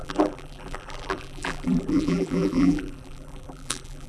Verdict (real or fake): fake